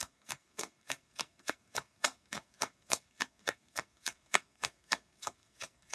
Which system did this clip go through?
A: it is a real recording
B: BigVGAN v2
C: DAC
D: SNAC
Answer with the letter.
D